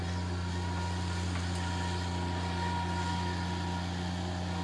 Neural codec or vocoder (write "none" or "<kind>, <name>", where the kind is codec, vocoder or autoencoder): none